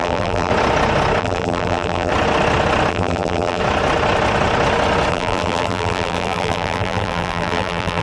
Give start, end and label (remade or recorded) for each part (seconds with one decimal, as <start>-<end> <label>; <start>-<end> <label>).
0.0-0.5 remade; 0.5-1.2 recorded; 1.2-2.1 remade; 2.1-2.9 recorded; 2.9-3.6 remade; 3.6-5.1 recorded; 5.1-8.0 remade